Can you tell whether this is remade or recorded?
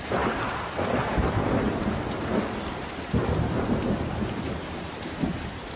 remade